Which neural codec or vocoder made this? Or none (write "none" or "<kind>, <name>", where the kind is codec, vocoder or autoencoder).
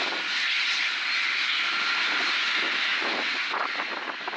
none